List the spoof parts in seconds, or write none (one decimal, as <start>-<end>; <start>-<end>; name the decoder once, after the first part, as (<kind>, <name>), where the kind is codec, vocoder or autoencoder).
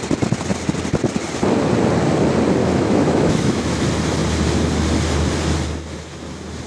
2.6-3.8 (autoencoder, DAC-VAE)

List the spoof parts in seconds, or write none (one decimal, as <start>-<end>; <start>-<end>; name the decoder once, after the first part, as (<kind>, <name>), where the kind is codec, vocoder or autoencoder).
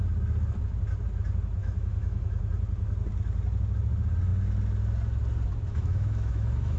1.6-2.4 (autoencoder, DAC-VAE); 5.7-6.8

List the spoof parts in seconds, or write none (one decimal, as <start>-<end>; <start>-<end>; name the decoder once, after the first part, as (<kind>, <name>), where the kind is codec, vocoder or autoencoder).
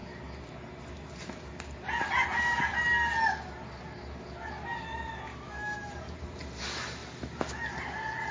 5.3-5.9 (autoencoder, DAC-VAE)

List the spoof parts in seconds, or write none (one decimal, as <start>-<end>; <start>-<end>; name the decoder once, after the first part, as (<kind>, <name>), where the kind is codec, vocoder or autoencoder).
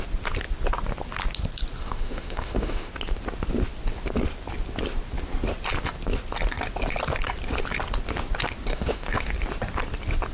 1.8-2.9 (autoencoder, DAC-VAE); 8.7-9.3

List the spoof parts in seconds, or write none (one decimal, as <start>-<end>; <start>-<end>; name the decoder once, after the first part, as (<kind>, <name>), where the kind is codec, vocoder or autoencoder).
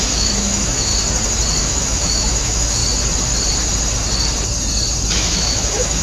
0.0-0.9 (autoencoder, DAC-VAE); 1.6-2.8; 5.1-6.0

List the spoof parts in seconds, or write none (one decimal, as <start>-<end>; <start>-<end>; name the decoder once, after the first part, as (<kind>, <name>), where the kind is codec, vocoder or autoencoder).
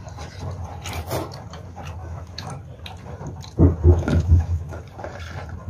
2.0-2.5 (autoencoder, DAC-VAE); 3.9-4.8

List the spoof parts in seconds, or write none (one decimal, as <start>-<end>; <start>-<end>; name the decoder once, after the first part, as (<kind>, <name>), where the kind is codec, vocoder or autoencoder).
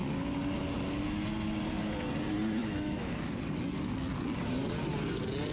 2.6-3.3 (autoencoder, DAC-VAE)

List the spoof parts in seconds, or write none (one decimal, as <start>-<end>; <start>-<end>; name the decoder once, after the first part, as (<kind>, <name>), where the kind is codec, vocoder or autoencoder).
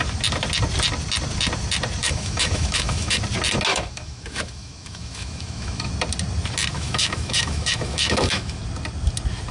2.0-3.2 (autoencoder, DAC-VAE); 3.7-5.9; 6.7-8.6